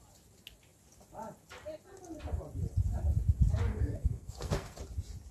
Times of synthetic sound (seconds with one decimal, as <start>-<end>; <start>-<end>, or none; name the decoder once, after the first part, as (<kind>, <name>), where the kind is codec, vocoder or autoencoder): 3.7-4.8 (codec, SNAC)